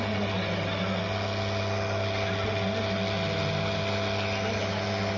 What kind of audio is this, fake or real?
real